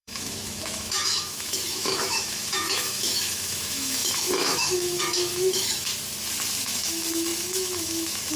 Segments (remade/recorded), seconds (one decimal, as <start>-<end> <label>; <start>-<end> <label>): 0.0-5.9 remade; 5.9-6.6 recorded; 6.6-8.4 remade